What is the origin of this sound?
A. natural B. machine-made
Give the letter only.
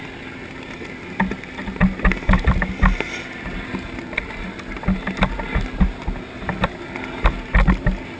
A